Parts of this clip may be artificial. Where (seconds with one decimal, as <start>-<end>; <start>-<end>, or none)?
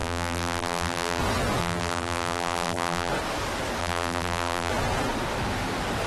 0.0-1.2; 1.6-3.1; 3.8-4.7